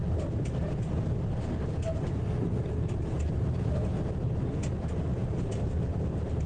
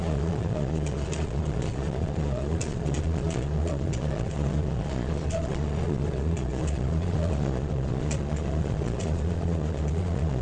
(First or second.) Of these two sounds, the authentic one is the first